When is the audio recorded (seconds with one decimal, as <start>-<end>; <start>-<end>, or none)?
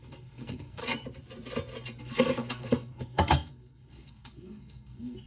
0.8-2.0